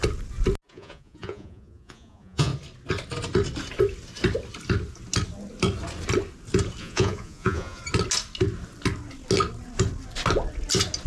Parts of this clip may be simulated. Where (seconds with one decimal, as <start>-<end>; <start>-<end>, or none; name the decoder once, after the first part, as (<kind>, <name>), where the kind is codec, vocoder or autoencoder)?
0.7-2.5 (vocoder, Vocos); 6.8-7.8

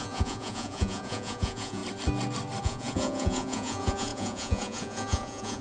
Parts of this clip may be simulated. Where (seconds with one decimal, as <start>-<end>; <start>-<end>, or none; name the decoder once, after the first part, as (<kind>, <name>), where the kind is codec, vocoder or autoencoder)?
0.0-1.8 (vocoder, Vocos); 2.6-5.6

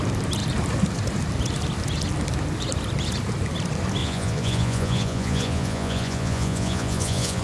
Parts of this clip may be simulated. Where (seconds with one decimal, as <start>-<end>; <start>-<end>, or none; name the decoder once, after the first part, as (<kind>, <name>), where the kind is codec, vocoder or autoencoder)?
4.0-7.4 (vocoder, Vocos)